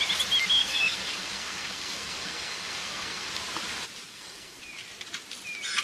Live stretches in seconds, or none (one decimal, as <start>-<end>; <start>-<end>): 0.0-0.6; 3.3-4.1; 4.6-5.8